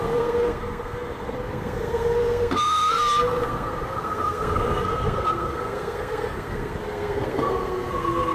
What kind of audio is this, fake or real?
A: fake